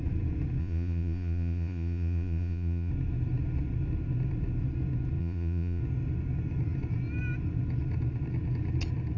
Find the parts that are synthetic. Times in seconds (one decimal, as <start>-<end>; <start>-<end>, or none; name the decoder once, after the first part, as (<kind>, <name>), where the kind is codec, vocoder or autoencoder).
0.6-2.9 (vocoder, Vocos); 5.2-5.8